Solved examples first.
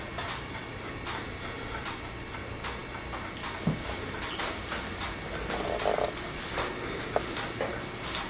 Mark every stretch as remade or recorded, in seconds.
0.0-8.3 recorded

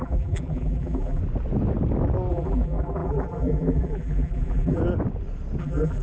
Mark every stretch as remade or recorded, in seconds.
0.0-1.2 remade; 1.2-2.3 recorded; 2.3-4.8 remade; 4.8-5.6 recorded; 5.6-6.0 remade

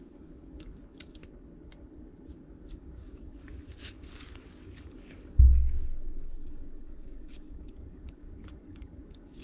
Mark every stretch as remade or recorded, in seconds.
0.0-1.2 remade; 1.2-2.7 recorded; 2.7-9.4 remade

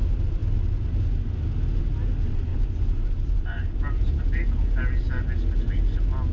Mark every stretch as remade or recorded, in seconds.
0.0-2.5 recorded; 2.5-4.2 remade; 4.2-6.3 recorded